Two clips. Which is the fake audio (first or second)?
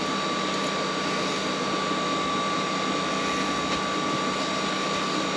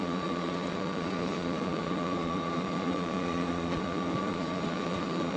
second